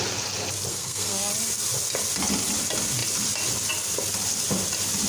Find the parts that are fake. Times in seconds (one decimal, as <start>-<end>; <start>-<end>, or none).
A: 0.7-1.3